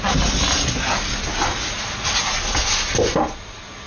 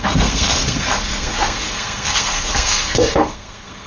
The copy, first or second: second